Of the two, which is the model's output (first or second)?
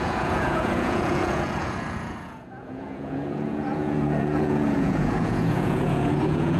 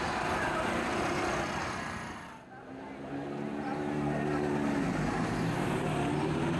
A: first